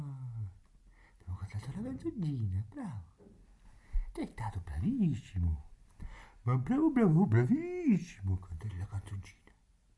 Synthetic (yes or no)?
no